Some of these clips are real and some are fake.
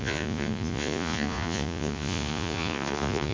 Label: fake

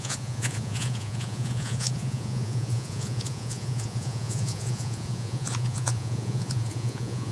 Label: fake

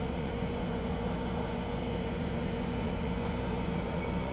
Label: fake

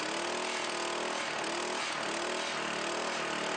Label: real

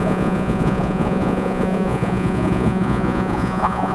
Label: fake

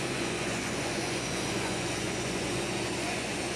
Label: fake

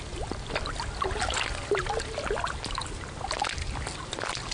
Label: real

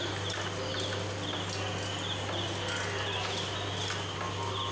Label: real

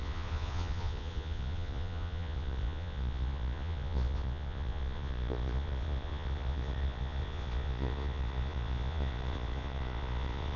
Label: fake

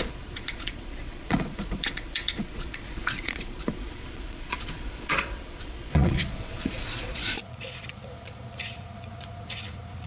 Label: fake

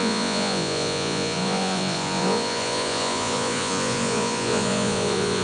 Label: fake